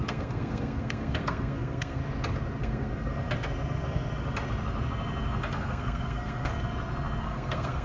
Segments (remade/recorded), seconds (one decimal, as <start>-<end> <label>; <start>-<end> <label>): 0.0-2.0 remade; 2.0-2.6 recorded; 2.6-3.1 remade; 3.1-5.5 recorded; 5.5-6.5 remade; 6.5-7.2 recorded; 7.2-7.8 remade